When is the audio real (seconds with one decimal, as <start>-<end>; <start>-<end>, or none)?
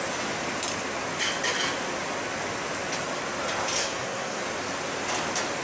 0.0-3.8; 4.4-5.6